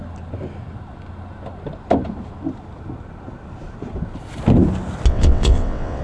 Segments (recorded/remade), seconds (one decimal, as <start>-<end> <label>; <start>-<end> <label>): 0.0-5.1 recorded; 5.1-6.0 remade